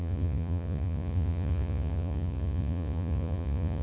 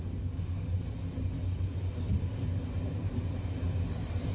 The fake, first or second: first